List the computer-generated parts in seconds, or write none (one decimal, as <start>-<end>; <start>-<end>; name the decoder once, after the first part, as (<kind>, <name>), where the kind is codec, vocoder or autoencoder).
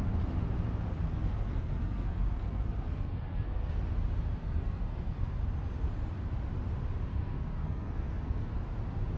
1.1-3.8 (codec, SNAC); 4.4-5.4; 7.1-8.6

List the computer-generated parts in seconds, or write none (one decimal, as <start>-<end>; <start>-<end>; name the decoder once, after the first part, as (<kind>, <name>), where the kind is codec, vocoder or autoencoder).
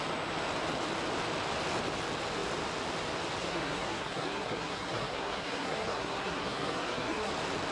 3.4-7.3 (codec, SNAC)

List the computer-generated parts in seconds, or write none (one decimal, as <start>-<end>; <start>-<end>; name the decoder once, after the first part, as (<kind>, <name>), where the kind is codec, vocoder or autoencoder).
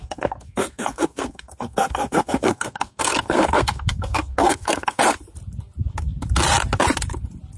0.0-5.0 (codec, SNAC)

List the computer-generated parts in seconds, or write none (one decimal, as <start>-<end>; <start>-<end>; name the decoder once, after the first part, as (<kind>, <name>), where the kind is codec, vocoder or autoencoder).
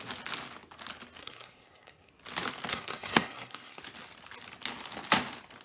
1.2-2.1 (codec, SNAC); 2.7-3.8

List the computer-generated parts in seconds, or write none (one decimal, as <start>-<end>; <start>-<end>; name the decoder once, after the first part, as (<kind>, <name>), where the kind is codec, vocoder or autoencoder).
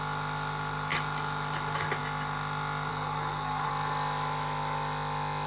2.9-3.7 (codec, SNAC)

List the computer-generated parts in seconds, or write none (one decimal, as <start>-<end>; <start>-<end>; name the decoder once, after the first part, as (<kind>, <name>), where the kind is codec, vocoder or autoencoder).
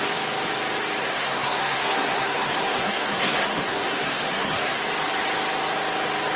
1.0-4.8 (codec, SNAC)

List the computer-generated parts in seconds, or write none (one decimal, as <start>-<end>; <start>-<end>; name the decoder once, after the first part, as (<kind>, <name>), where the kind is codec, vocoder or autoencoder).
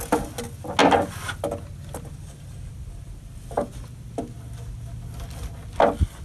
none